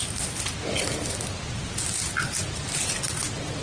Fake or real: real